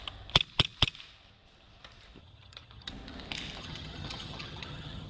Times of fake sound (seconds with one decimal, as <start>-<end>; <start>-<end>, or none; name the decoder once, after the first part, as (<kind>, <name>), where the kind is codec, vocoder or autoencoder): 2.2-2.9 (vocoder, HiFi-GAN); 3.6-5.1